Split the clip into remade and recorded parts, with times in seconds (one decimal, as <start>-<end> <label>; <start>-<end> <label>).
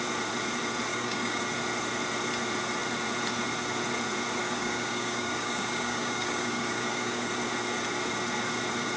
0.0-0.9 recorded; 0.9-1.4 remade; 1.4-4.4 recorded; 4.4-7.3 remade; 7.3-9.0 recorded